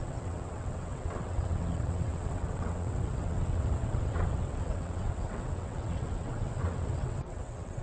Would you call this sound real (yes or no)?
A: no